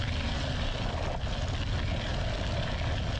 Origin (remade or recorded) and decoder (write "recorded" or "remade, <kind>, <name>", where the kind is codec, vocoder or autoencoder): recorded